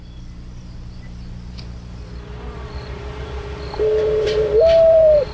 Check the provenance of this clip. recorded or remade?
remade